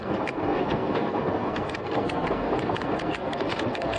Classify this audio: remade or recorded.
remade